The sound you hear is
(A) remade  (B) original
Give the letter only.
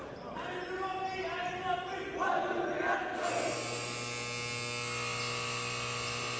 B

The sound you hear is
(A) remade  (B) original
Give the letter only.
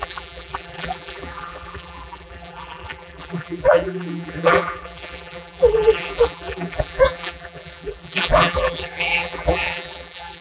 A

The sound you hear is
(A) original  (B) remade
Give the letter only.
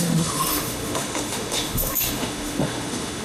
B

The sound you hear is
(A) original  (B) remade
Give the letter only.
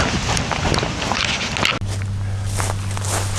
A